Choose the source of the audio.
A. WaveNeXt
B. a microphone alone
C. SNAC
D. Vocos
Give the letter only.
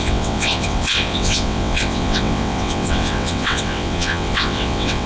A